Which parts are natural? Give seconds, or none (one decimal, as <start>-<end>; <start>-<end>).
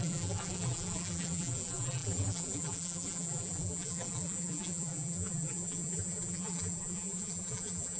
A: none